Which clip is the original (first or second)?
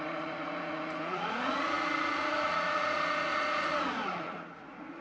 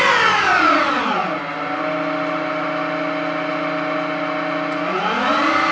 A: second